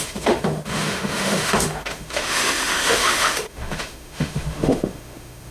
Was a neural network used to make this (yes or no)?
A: yes